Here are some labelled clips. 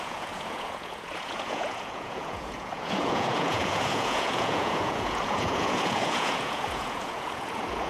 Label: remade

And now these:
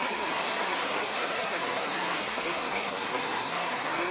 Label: remade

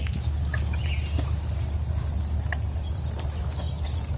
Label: recorded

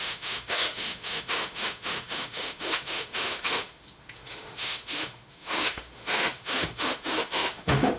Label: remade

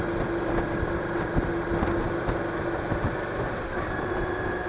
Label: recorded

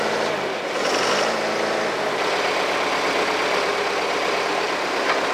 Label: remade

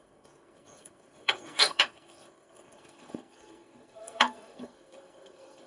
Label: remade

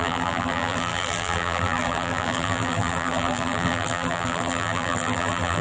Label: remade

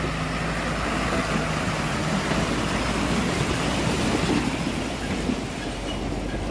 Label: recorded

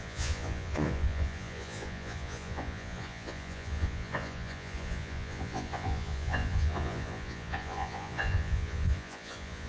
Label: remade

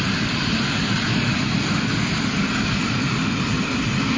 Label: recorded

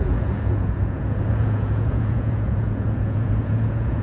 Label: remade